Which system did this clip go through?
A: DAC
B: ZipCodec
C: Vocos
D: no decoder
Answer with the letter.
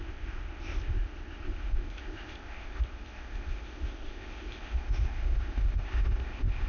B